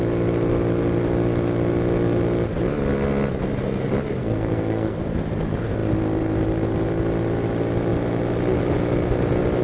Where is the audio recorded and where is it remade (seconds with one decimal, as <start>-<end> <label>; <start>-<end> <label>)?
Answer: 0.0-4.2 recorded; 4.2-5.0 remade; 5.0-9.6 recorded